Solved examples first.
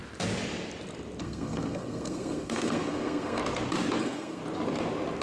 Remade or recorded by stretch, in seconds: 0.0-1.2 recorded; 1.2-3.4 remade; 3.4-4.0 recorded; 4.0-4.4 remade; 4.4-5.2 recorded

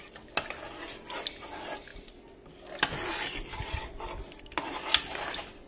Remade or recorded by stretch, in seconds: 0.0-5.7 recorded

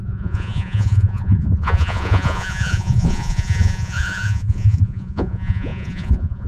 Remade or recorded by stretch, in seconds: 0.0-6.5 remade

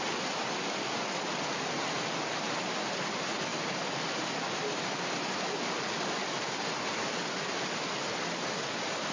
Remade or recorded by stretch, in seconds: 0.0-9.1 recorded

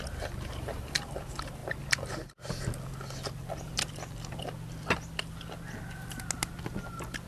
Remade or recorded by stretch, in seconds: 0.0-7.3 recorded

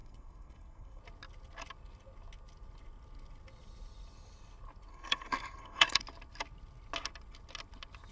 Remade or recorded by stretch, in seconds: 0.0-1.0 remade; 1.0-4.9 recorded; 4.9-6.0 remade; 6.0-8.1 recorded

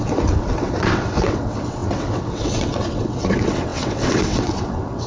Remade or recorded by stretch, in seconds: 0.0-5.1 remade